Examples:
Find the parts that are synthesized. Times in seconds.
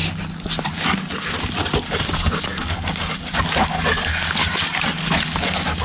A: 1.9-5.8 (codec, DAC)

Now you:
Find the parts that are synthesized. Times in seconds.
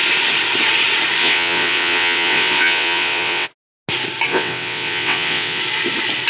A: 1.2-3.5 (vocoder, WaveNeXt); 4.3-5.6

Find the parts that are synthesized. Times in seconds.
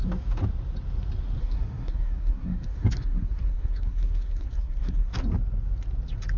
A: 1.4-5.2 (codec, SNAC)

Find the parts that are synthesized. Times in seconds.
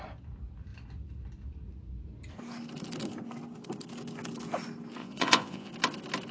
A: 5.0-5.7 (vocoder, Vocos)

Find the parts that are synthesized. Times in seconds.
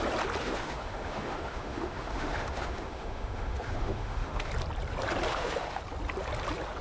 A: 0.4-4.5 (autoencoder, DAC-VAE); 5.3-5.8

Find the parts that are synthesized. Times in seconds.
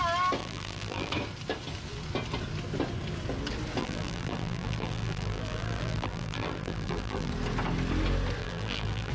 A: 0.4-1.1 (vocoder, BigVGAN v2); 3.8-7.3; 8.4-9.1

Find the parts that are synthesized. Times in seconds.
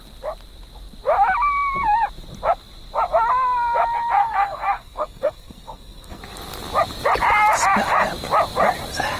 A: 4.2-6.2 (codec, SNAC)